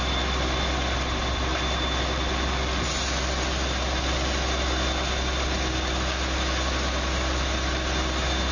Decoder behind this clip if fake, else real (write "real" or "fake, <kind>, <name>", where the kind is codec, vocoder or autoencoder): real